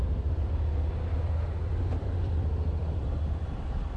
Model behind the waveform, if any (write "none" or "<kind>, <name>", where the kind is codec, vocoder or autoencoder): vocoder, BigVGAN v2